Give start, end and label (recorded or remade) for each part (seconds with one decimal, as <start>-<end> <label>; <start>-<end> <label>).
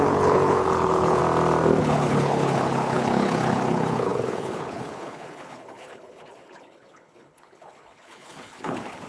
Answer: 0.0-1.2 remade; 1.2-1.8 recorded; 1.8-9.1 remade